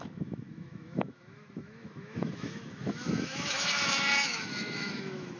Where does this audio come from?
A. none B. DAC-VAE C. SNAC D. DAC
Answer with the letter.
B